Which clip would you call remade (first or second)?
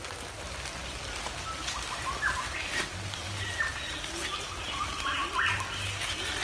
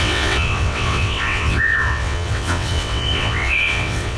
second